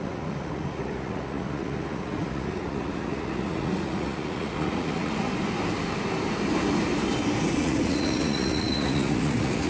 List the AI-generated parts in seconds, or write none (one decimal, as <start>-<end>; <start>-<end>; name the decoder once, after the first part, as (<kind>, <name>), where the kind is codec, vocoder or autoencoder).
0.0-5.3 (vocoder, Vocos); 7.6-9.7